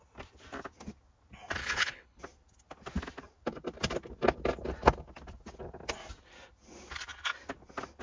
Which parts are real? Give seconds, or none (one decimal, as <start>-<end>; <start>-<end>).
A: 0.0-1.6; 2.2-8.0